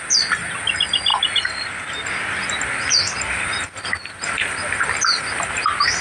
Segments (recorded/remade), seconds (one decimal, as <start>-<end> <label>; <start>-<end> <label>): 0.0-6.0 recorded

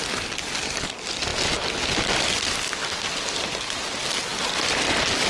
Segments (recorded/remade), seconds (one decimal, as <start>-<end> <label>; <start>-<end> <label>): 0.0-5.3 recorded

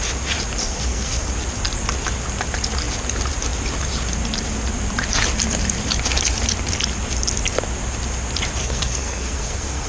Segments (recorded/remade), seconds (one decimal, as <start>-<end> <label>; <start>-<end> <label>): 0.0-0.6 recorded; 0.6-1.3 remade; 1.3-8.6 recorded; 8.6-9.9 remade

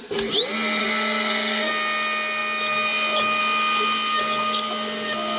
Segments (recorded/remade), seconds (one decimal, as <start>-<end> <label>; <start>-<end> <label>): 0.0-0.8 recorded; 0.8-1.7 remade; 1.7-5.4 recorded

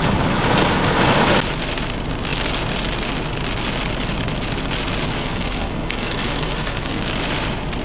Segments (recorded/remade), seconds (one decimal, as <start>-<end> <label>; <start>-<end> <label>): 0.0-5.2 recorded; 5.2-7.0 remade; 7.0-7.8 recorded

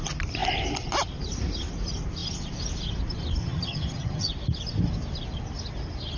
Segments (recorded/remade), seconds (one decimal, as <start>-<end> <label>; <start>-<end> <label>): 0.0-3.4 recorded; 3.4-4.3 remade; 4.3-6.2 recorded